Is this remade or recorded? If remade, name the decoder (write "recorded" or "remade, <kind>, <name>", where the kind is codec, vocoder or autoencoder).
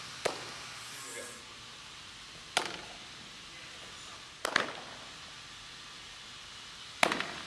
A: recorded